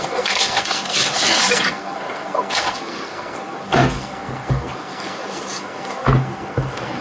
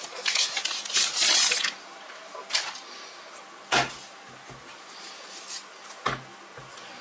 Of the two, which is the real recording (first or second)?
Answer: second